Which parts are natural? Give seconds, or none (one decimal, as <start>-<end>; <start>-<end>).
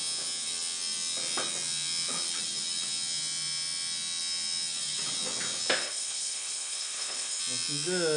0.0-5.8; 7.4-8.2